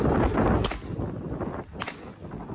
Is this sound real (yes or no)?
yes